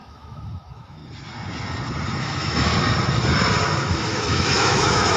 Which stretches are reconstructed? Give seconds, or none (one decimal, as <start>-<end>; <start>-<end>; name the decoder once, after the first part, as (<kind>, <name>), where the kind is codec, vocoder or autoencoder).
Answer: 0.0-1.0 (autoencoder, DAC-VAE); 2.2-2.7; 3.9-5.2